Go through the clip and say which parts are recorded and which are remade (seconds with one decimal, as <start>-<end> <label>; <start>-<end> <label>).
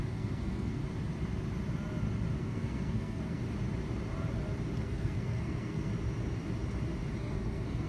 0.0-0.8 remade; 0.8-2.4 recorded; 2.4-3.4 remade; 3.4-4.8 recorded; 4.8-5.9 remade; 5.9-7.2 recorded; 7.2-7.9 remade